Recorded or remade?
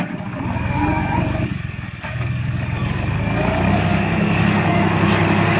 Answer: remade